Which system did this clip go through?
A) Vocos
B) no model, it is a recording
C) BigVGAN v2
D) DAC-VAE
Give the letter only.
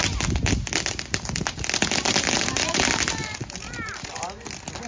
B